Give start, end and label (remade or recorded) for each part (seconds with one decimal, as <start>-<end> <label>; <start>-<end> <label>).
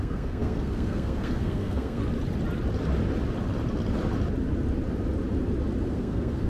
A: 0.0-2.0 remade; 2.0-5.9 recorded; 5.9-6.5 remade